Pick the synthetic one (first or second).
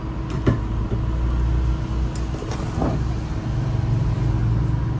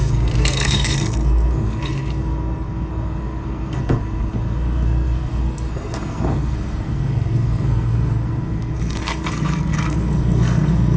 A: second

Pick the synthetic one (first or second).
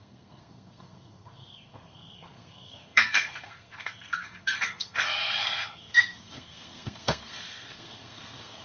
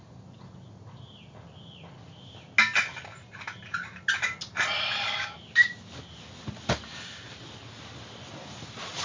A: first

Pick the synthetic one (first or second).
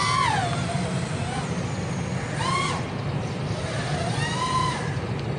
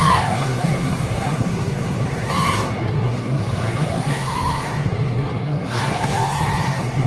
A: second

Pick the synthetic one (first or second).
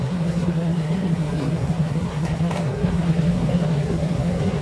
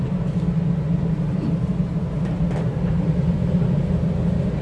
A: first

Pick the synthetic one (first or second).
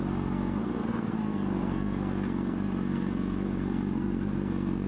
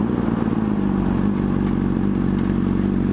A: first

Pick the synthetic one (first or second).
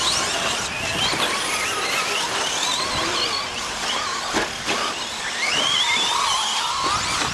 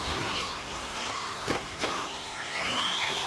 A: second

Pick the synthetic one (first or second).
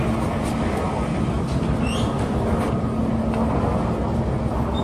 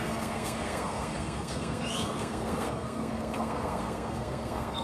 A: second